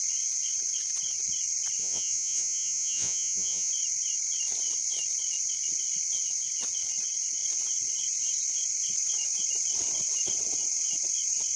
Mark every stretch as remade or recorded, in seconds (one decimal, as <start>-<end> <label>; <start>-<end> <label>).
0.0-1.8 recorded; 1.8-3.7 remade; 3.7-11.6 recorded